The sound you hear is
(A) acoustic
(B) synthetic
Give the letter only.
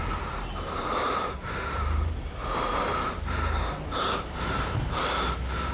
B